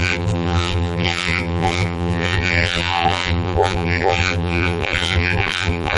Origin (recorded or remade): remade